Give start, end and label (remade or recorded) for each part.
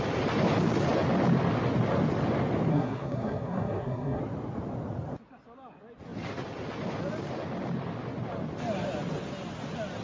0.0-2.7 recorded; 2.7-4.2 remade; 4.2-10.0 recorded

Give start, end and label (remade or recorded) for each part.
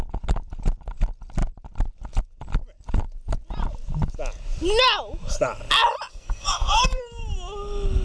0.0-6.1 recorded; 6.1-7.0 remade; 7.0-8.0 recorded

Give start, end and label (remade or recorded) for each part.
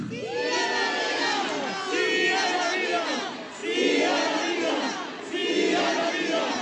0.0-6.6 recorded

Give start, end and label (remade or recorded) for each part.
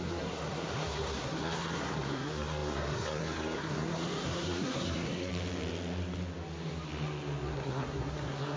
0.0-5.3 remade; 5.3-7.5 recorded; 7.5-8.6 remade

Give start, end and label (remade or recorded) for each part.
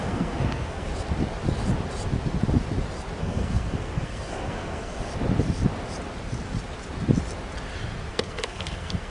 0.0-0.9 remade; 0.9-3.2 recorded; 3.2-5.1 remade; 5.1-8.1 recorded; 8.1-9.1 remade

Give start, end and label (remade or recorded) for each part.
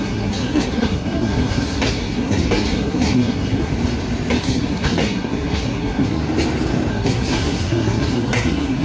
0.0-3.7 remade; 3.7-4.4 recorded; 4.4-6.2 remade; 6.2-6.9 recorded; 6.9-8.8 remade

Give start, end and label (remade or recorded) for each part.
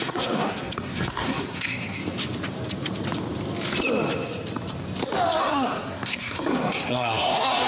0.0-2.0 remade; 2.0-5.4 recorded; 5.4-7.7 remade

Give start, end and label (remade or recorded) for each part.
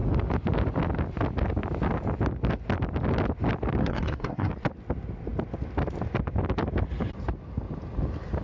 0.0-3.8 recorded; 3.8-4.5 remade; 4.5-8.4 recorded